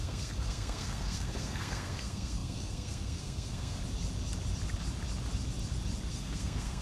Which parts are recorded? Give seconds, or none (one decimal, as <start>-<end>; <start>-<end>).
3.8-6.1